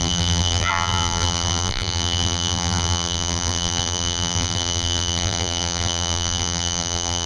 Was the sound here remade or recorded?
remade